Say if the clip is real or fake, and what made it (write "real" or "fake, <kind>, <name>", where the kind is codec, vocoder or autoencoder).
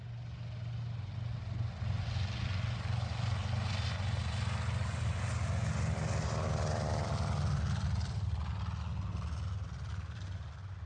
real